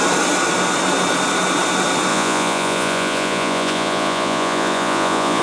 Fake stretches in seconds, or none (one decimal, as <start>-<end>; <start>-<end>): 2.1-5.4